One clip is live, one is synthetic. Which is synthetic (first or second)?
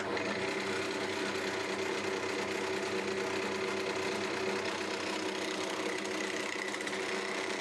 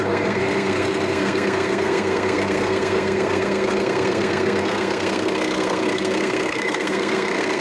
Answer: second